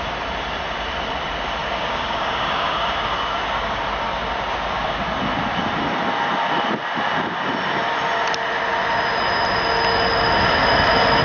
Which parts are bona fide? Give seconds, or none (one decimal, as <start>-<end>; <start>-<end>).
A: 0.0-1.6; 3.8-11.2